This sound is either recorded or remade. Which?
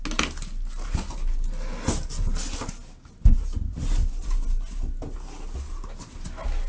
recorded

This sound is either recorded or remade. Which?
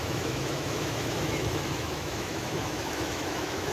remade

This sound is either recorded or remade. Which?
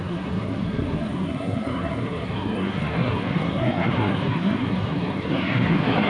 remade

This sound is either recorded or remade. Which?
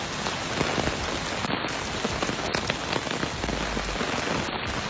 recorded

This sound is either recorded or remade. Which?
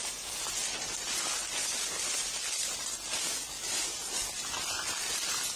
remade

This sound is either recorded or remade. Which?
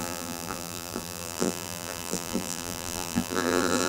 remade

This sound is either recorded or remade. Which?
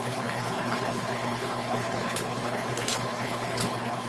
remade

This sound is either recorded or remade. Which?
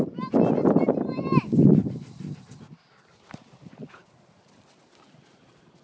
recorded